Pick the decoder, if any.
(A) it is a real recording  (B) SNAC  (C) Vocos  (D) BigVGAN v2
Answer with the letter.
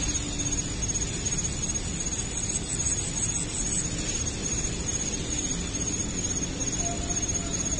A